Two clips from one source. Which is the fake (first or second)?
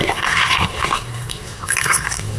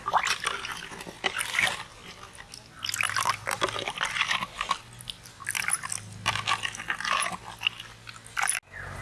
first